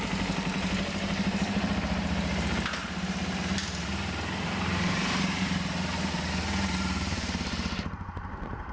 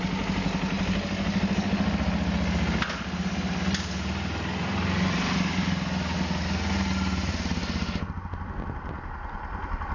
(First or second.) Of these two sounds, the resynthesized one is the first